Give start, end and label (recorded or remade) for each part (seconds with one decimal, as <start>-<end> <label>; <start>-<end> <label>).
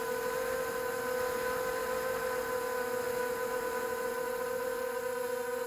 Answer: 0.0-4.1 recorded; 4.1-5.0 remade; 5.0-5.7 recorded